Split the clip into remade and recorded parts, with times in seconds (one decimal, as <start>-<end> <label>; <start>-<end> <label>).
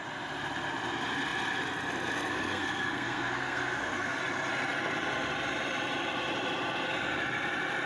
0.0-2.3 recorded; 2.3-4.2 remade; 4.2-7.9 recorded